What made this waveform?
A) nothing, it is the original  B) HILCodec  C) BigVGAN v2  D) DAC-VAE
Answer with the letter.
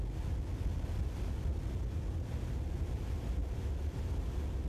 A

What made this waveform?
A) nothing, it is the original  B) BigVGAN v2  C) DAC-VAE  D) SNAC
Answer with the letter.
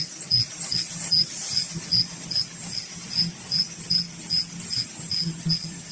A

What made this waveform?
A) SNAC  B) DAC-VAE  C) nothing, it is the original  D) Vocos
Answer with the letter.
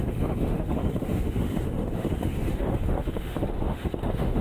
B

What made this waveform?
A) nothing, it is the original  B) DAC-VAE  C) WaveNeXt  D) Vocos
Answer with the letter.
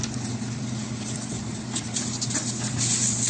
A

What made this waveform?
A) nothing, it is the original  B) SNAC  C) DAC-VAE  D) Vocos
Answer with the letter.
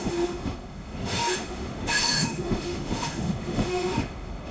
C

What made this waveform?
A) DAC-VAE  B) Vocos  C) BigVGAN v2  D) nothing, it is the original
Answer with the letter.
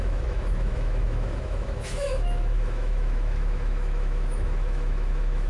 A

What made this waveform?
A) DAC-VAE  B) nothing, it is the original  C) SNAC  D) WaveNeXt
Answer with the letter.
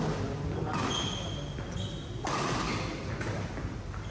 B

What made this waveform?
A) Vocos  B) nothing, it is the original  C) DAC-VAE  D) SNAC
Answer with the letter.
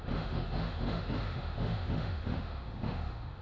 C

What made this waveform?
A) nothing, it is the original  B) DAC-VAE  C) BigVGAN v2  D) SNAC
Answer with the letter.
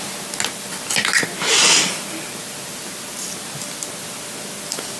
A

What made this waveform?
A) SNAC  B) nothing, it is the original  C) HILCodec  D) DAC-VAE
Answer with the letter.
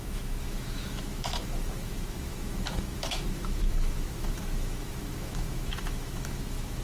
D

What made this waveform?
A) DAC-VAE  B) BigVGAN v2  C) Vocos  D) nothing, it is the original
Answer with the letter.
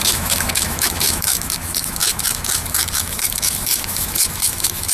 A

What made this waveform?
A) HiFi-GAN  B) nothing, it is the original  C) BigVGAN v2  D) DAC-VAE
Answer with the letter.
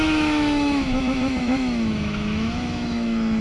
D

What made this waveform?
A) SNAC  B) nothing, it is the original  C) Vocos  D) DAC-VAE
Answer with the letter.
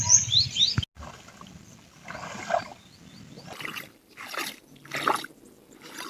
B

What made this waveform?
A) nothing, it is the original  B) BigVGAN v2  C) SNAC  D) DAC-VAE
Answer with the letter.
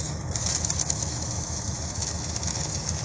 D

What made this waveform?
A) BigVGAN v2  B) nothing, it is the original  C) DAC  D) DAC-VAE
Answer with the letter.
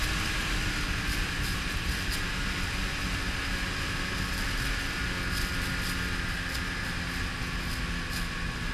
B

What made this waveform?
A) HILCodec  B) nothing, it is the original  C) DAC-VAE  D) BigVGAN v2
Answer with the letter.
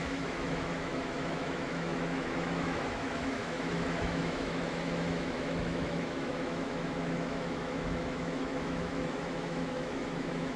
C